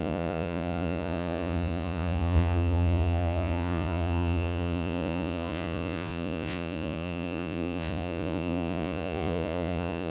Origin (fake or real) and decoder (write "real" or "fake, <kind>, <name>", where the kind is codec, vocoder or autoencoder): fake, vocoder, Vocos